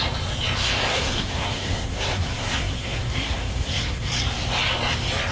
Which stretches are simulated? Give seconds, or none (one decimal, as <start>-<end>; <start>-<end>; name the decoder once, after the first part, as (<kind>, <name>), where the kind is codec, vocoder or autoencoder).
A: 0.9-4.1 (codec, SNAC)